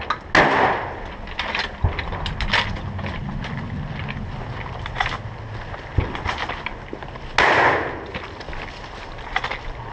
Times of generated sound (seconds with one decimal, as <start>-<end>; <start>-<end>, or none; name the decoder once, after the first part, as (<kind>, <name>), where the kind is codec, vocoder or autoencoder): none